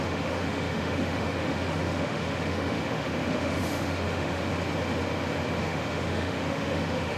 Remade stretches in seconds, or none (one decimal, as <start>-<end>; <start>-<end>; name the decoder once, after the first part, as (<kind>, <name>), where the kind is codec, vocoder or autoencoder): 0.0-4.5 (autoencoder, DAC-VAE); 5.6-7.2